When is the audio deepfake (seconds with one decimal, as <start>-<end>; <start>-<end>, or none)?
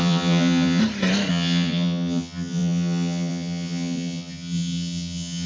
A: 0.0-0.8; 1.3-5.5